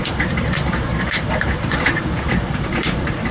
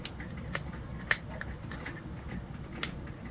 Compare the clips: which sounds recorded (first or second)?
second